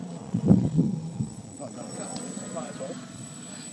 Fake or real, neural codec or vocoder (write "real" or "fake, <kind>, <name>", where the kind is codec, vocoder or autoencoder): fake, vocoder, Vocos